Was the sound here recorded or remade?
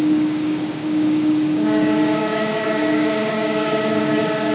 remade